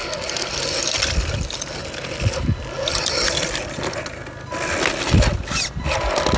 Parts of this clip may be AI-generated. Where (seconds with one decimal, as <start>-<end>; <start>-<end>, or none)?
none

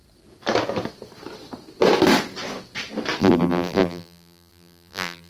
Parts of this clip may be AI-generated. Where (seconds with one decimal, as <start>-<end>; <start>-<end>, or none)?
3.2-5.3

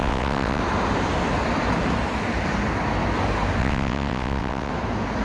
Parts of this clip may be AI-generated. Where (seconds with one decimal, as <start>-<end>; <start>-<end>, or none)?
0.0-0.6; 3.6-4.7

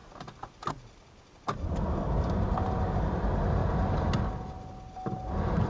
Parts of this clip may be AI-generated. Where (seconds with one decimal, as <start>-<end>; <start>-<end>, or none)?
none

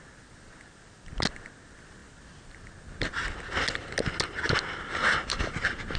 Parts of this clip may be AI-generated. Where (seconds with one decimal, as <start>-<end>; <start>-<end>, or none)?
none

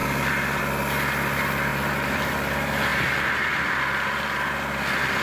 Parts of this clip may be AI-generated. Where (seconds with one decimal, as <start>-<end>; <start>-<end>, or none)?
1.7-2.3; 2.9-3.5

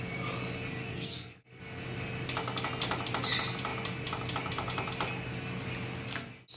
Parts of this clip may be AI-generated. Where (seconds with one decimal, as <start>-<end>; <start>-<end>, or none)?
0.9-1.6